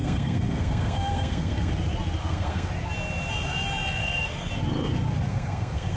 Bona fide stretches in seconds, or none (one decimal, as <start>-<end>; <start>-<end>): 1.7-2.2; 2.7-4.0; 4.5-5.3